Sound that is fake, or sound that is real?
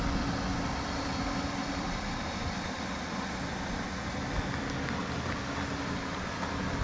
real